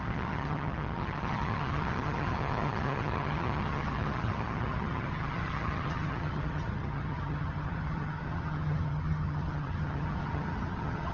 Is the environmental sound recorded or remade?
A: remade